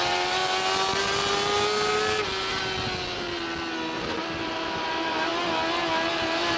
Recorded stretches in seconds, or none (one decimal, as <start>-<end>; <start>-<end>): 0.4-4.4; 5.3-6.1